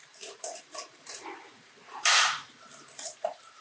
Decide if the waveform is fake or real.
fake